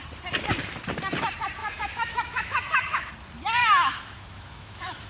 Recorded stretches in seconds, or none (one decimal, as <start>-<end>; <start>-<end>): 0.0-1.6; 3.1-3.6